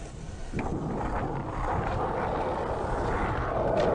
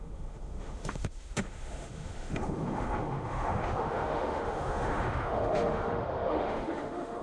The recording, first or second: first